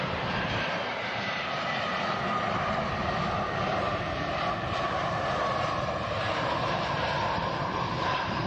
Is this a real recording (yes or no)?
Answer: no